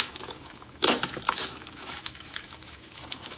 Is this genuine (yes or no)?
no